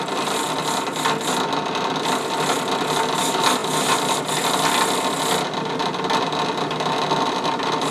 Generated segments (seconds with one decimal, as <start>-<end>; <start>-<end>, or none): none